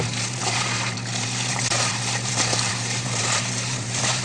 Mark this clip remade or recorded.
remade